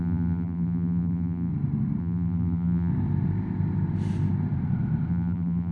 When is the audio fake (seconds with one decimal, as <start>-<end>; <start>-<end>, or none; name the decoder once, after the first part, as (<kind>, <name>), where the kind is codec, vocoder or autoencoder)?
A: 0.0-1.5 (vocoder, BigVGAN v2); 2.0-2.9; 5.1-5.7